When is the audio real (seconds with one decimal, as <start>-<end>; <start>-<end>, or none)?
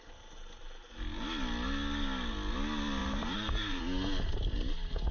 0.0-3.0; 3.8-5.1